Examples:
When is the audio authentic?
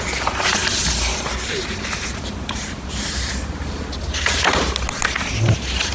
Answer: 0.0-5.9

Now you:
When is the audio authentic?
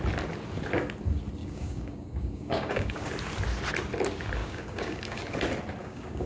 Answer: 0.0-1.4; 3.1-4.4; 5.2-5.8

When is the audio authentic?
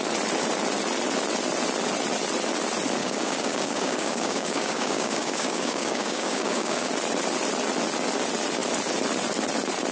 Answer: 0.0-3.0; 6.9-9.9